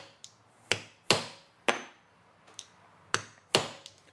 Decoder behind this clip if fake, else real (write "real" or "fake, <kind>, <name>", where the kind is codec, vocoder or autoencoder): real